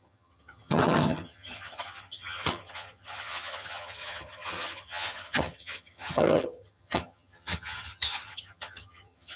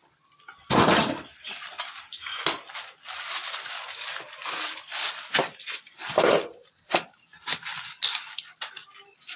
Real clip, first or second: second